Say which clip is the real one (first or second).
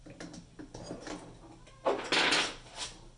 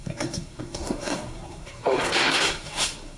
first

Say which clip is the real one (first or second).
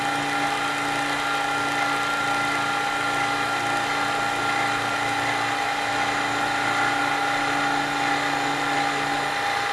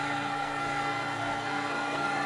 first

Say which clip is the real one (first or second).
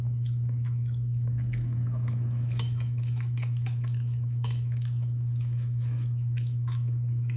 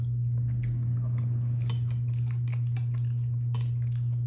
second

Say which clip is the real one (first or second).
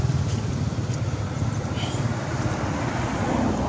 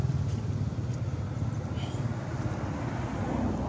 second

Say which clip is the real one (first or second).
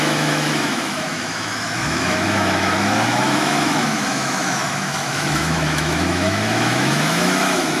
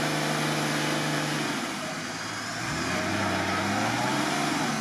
second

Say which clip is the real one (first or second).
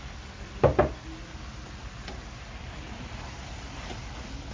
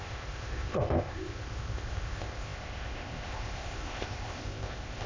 first